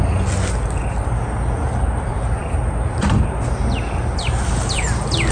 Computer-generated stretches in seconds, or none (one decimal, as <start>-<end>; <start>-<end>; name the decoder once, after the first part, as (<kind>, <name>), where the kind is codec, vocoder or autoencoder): none